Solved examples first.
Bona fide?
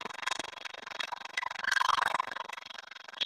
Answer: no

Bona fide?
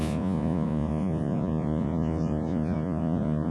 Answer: no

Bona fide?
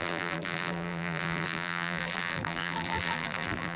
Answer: no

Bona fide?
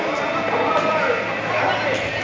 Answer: yes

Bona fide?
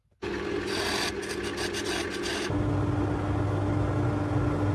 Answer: yes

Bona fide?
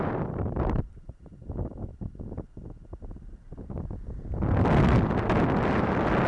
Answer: yes